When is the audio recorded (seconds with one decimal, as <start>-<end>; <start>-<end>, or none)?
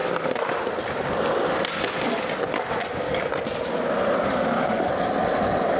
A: 0.0-4.3; 4.9-5.8